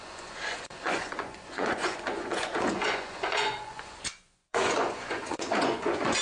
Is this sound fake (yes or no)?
yes